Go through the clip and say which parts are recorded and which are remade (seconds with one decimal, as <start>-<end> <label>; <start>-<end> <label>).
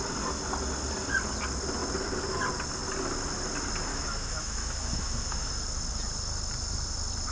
0.0-3.9 recorded; 3.9-5.5 remade; 5.5-7.3 recorded